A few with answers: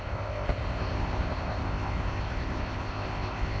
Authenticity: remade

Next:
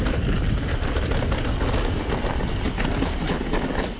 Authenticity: recorded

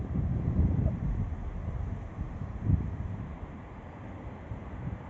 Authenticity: remade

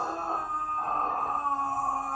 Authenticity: recorded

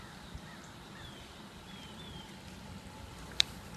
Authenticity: remade